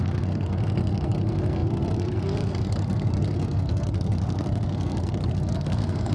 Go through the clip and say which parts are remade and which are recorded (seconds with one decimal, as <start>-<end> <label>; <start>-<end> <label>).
0.0-6.1 remade